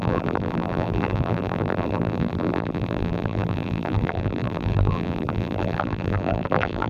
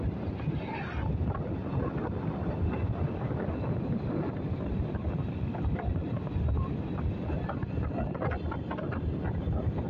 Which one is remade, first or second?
first